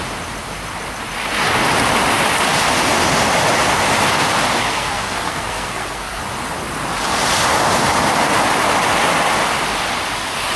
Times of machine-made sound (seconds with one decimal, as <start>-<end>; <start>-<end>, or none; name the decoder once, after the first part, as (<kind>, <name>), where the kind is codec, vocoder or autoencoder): 4.6-6.2 (codec, SNAC)